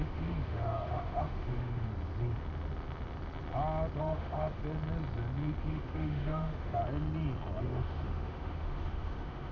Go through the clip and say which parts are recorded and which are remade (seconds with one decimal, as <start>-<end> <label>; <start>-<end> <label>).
0.0-1.9 remade; 1.9-4.0 recorded; 4.0-4.6 remade; 4.6-5.6 recorded; 5.6-6.8 remade; 6.8-7.6 recorded; 7.6-9.5 remade